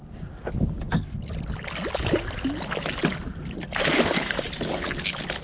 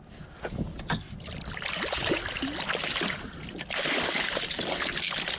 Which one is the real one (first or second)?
first